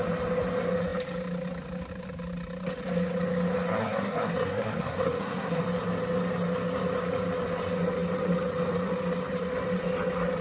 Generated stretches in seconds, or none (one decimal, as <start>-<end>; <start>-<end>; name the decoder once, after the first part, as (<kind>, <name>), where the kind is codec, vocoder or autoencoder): 3.8-5.6 (codec, SNAC)